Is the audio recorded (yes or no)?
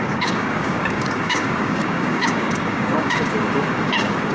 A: no